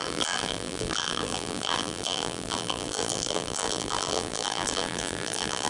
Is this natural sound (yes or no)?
no